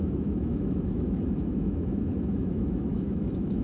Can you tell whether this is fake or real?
fake